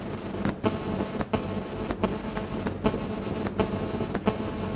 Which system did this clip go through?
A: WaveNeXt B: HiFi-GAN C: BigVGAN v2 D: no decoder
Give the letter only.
D